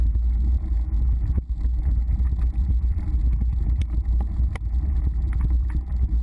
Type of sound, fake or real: real